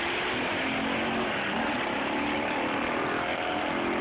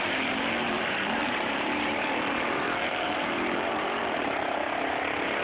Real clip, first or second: first